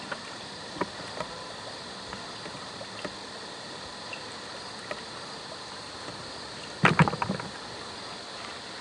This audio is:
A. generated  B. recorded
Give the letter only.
B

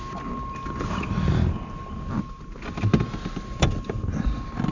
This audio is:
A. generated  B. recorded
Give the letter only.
B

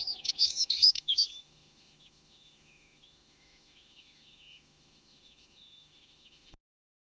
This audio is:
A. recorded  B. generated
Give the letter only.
B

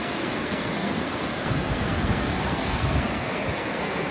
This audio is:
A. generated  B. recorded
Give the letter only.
A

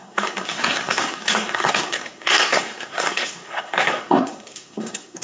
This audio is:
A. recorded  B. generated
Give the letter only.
B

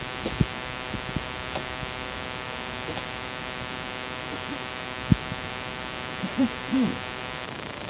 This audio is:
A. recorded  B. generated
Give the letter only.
B